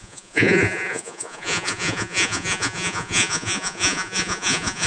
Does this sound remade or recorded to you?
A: remade